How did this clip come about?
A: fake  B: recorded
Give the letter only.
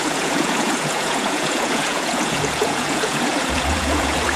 A